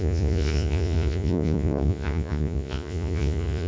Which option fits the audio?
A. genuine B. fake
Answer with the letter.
B